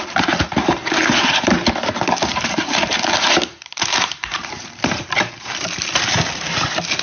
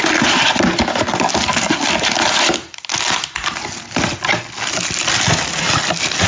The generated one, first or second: first